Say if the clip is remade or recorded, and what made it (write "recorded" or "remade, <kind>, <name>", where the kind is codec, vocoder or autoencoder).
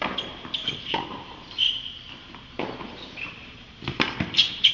remade, vocoder, BigVGAN v2